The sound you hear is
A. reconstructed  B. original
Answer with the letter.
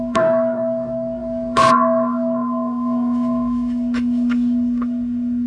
A